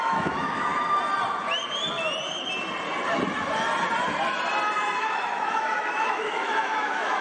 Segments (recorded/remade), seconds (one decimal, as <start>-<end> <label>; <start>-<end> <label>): 0.0-0.7 remade; 0.7-5.0 recorded; 5.0-7.2 remade

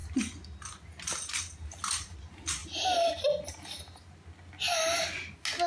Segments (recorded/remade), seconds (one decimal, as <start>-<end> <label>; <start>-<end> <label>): 0.0-5.7 recorded

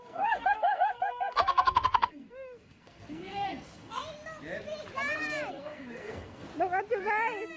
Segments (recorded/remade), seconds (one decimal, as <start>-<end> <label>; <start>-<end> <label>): 0.0-4.0 remade; 4.0-5.5 recorded; 5.5-6.5 remade; 6.5-7.6 recorded

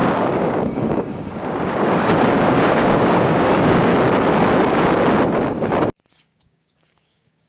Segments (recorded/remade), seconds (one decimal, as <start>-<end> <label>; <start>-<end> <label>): 0.0-3.9 remade; 3.9-6.1 recorded; 6.1-7.5 remade

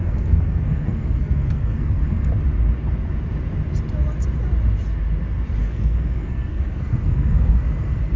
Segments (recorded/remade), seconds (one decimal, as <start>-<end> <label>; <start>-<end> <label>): 0.0-2.3 remade; 2.3-5.6 recorded; 5.6-8.2 remade

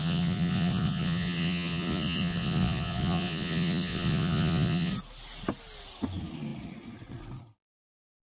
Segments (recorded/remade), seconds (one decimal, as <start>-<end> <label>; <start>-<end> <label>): 0.0-4.9 remade; 4.9-8.2 recorded

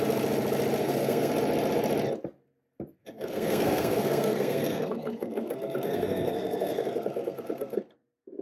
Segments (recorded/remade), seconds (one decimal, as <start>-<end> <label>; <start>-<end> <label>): 0.0-0.8 recorded; 0.8-1.3 remade; 1.3-3.0 recorded; 3.0-7.8 remade; 7.8-8.4 recorded

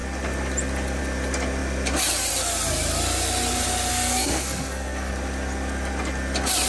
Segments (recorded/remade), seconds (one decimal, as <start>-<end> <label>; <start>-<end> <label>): 0.0-3.9 recorded; 3.9-5.1 remade; 5.1-6.7 recorded